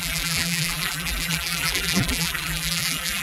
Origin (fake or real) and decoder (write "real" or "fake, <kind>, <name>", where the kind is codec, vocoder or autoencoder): fake, vocoder, BigVGAN v2